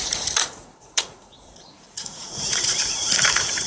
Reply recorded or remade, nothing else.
remade